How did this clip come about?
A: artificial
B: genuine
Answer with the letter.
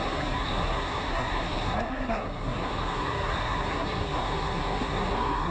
A